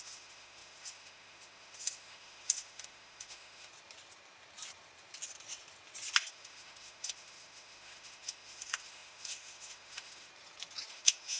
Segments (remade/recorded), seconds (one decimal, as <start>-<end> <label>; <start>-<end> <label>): 0.0-3.7 remade; 3.7-6.3 recorded; 6.3-10.3 remade; 10.3-10.9 recorded; 10.9-11.4 remade